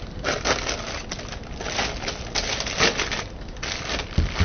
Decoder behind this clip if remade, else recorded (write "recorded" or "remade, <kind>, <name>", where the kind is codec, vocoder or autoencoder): recorded